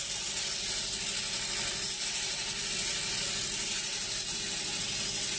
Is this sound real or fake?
real